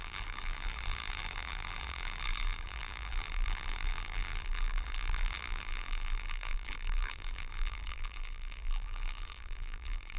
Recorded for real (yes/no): no